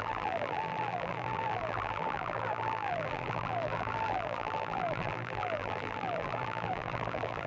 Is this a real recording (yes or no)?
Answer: no